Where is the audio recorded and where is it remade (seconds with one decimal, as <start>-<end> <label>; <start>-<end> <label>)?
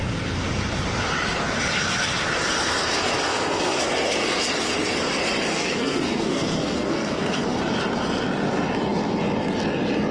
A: 0.0-3.3 recorded; 3.3-3.8 remade; 3.8-5.5 recorded; 5.5-7.6 remade; 7.6-10.1 recorded